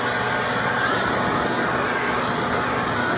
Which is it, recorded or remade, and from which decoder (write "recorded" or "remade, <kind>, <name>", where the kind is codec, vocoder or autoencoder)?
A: recorded